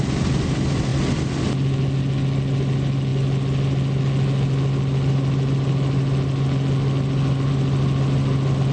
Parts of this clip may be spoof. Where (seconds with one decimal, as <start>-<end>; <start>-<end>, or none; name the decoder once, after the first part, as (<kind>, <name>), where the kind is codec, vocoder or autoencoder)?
none